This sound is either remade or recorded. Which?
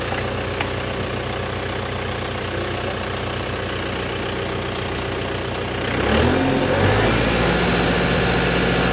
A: recorded